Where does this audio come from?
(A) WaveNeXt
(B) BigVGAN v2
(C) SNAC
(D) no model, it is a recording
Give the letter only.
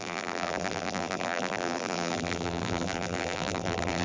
B